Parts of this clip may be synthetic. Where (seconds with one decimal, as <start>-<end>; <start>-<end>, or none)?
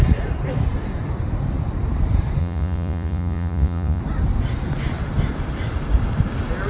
2.4-4.0